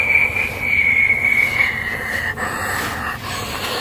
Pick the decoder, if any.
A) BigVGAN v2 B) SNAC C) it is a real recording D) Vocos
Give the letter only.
C